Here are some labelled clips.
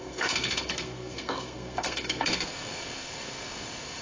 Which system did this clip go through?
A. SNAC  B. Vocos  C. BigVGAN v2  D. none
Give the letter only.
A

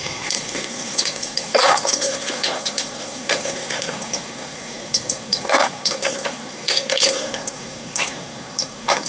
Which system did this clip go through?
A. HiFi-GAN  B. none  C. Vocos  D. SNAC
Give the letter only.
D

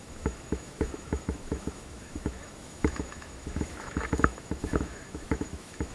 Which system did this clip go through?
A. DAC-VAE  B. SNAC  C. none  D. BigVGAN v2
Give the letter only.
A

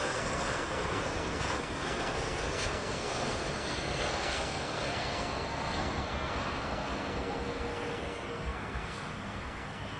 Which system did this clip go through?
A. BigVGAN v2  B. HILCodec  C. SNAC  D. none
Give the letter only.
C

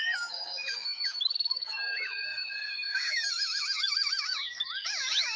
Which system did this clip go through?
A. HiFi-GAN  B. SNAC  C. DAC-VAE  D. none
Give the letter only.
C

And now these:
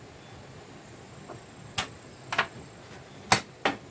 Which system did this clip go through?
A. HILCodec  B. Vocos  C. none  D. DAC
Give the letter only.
C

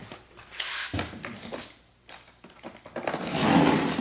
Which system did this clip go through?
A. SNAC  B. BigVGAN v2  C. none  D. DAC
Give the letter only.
C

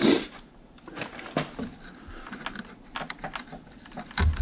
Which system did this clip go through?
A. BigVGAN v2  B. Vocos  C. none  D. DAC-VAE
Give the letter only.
C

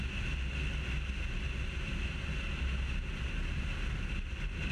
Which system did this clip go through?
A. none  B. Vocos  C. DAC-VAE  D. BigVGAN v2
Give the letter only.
A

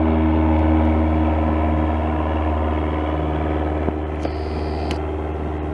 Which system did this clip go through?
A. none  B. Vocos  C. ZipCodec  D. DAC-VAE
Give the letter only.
A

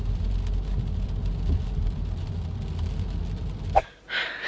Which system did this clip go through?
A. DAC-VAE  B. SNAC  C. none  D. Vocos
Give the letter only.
C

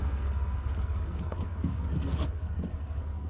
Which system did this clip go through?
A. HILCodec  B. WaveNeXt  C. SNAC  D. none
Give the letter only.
C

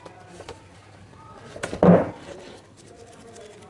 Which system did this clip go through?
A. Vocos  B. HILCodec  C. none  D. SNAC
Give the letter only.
C